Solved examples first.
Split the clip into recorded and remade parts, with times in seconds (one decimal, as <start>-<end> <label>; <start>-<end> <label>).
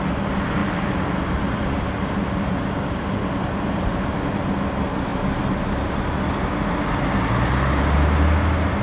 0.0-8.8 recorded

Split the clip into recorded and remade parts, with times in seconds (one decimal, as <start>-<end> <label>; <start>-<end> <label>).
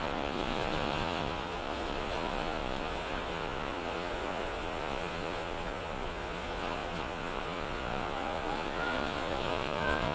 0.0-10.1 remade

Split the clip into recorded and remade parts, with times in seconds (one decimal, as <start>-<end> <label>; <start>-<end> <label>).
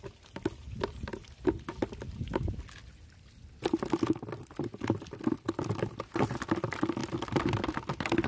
0.0-8.3 recorded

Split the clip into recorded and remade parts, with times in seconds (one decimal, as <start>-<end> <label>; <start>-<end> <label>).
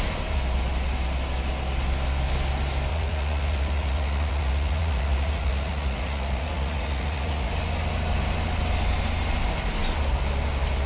0.0-2.9 recorded; 2.9-7.5 remade; 7.5-10.9 recorded